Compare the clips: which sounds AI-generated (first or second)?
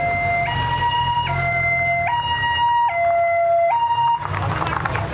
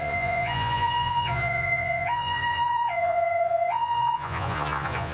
second